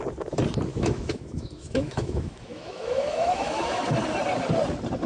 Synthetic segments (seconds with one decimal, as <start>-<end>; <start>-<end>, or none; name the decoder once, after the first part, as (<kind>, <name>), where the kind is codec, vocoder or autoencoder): 0.7-3.8 (autoencoder, DAC-VAE)